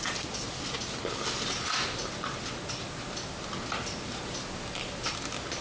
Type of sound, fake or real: real